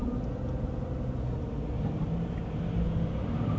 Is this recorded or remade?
recorded